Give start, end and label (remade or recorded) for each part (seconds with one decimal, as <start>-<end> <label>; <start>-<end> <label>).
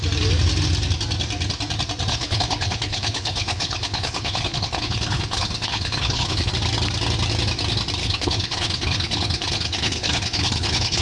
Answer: 0.0-2.1 recorded; 2.1-6.5 remade; 6.5-8.0 recorded; 8.0-11.0 remade